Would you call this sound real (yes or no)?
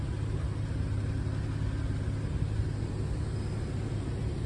yes